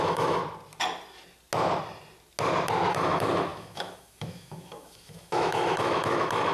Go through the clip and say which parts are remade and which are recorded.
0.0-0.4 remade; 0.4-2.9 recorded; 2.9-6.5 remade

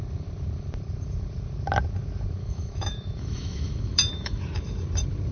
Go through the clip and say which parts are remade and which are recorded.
0.0-2.4 recorded; 2.4-4.4 remade; 4.4-5.3 recorded

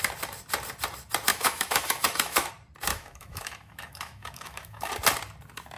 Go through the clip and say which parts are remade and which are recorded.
0.0-1.3 recorded; 1.3-2.5 remade; 2.5-2.9 recorded; 2.9-4.9 remade; 4.9-5.8 recorded

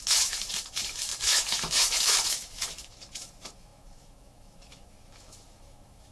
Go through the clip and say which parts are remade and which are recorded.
0.0-6.1 remade

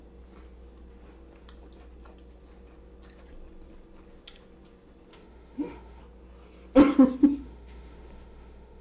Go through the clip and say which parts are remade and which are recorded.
0.0-5.1 recorded; 5.1-6.0 remade; 6.0-7.2 recorded; 7.2-8.8 remade

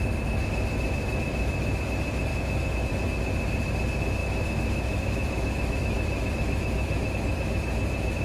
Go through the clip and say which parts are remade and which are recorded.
0.0-1.0 recorded; 1.0-1.8 remade; 1.8-2.3 recorded; 2.3-2.9 remade; 2.9-4.2 recorded; 4.2-7.1 remade; 7.1-8.2 recorded

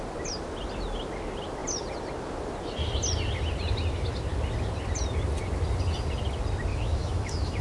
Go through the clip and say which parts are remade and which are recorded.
0.0-6.7 recorded; 6.7-7.6 remade

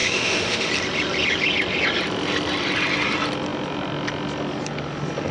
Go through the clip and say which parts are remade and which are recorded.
0.0-0.7 remade; 0.7-5.3 recorded